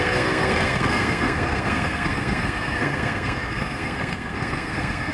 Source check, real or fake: fake